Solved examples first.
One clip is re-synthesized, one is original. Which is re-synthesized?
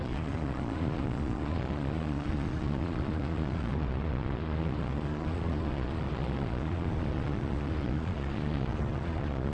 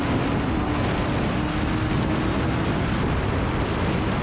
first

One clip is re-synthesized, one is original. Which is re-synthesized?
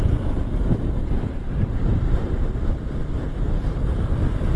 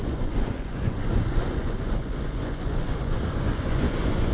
second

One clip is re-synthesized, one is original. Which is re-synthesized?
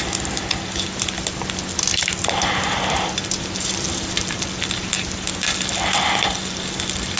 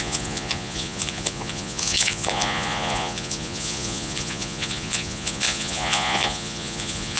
second